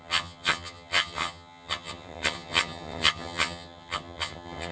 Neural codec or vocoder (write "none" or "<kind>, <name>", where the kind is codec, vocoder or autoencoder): vocoder, HiFi-GAN